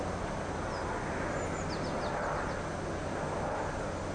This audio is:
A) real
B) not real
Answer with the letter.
A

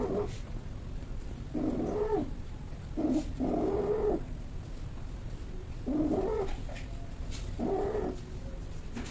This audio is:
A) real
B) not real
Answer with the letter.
A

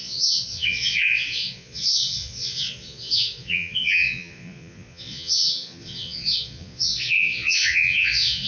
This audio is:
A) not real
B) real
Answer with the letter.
A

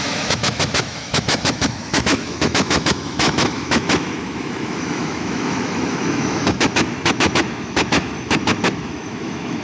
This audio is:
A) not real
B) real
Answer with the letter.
A